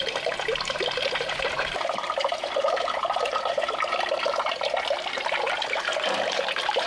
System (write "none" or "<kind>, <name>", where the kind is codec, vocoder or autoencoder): vocoder, BigVGAN v2